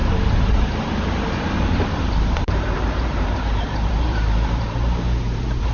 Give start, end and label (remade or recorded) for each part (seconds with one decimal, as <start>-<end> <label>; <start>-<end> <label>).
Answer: 0.0-5.7 remade